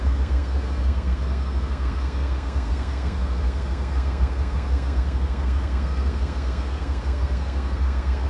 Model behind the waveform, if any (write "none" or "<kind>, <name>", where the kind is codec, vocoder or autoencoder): codec, SNAC